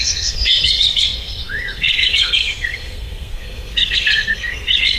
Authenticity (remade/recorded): remade